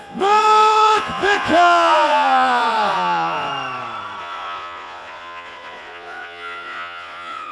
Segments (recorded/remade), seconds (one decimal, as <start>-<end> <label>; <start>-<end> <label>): 0.0-3.5 remade; 3.5-4.2 recorded; 4.2-7.5 remade